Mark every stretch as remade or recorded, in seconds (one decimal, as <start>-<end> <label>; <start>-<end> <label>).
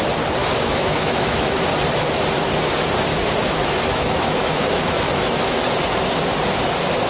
0.0-0.4 recorded; 0.4-1.7 remade; 1.7-3.4 recorded; 3.4-5.6 remade; 5.6-7.1 recorded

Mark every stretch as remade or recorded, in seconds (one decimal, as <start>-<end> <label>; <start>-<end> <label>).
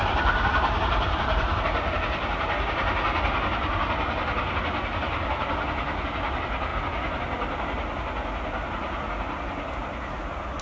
0.0-1.6 remade; 1.6-10.6 recorded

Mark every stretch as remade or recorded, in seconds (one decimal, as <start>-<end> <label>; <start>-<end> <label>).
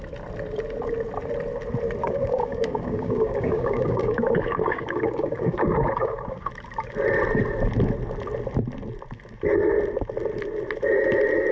0.0-2.0 recorded; 2.0-6.5 remade; 6.5-11.5 recorded